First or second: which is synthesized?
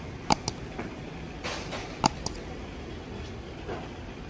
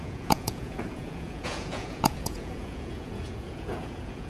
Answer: second